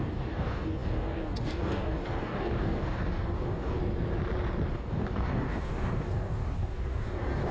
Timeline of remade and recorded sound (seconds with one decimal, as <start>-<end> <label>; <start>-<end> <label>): 0.0-3.8 remade; 3.8-4.7 recorded; 4.7-7.5 remade